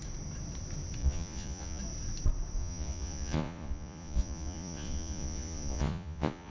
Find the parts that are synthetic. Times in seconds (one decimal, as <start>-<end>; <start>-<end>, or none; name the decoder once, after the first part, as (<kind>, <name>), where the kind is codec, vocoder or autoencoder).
1.0-1.8 (vocoder, Vocos); 2.6-6.5